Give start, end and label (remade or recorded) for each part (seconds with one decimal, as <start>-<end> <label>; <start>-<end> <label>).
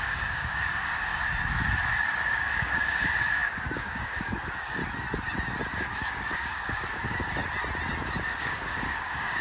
0.0-1.1 remade; 1.1-2.3 recorded; 2.3-4.8 remade; 4.8-5.7 recorded; 5.7-7.4 remade; 7.4-8.2 recorded; 8.2-9.4 remade